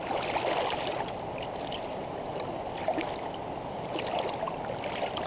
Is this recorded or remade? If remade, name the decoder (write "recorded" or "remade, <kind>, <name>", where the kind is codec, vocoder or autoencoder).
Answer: recorded